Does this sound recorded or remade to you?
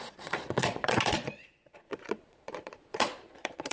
remade